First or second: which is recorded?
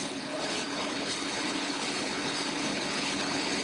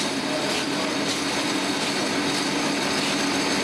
second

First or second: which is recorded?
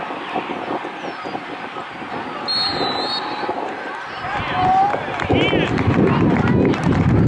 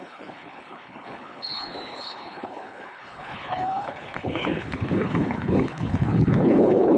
first